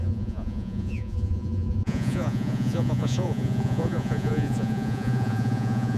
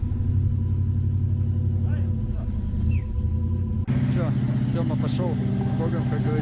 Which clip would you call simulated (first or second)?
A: first